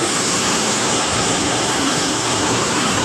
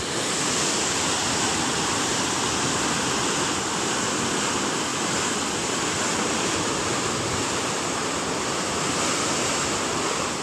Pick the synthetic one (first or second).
first